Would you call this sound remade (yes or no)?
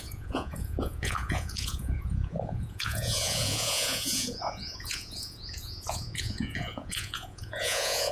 yes